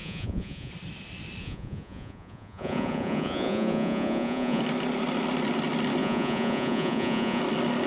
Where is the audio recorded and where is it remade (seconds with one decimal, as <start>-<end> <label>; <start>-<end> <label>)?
0.0-0.7 remade; 0.7-1.4 recorded; 1.4-4.6 remade; 4.6-6.0 recorded; 6.0-7.4 remade; 7.4-7.9 recorded